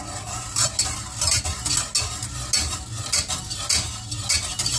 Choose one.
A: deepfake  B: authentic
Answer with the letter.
B